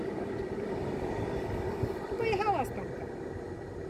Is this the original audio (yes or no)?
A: yes